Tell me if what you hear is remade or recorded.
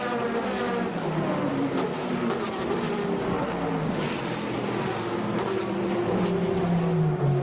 recorded